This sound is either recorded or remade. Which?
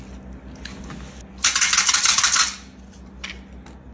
recorded